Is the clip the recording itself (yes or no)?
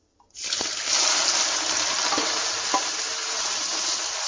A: yes